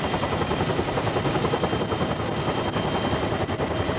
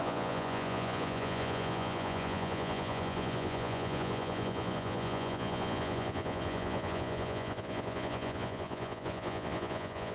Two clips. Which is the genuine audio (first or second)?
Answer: first